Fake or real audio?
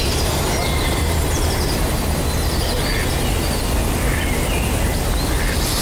real